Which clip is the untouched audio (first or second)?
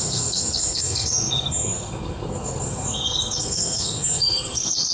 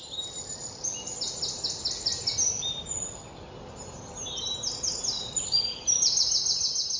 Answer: second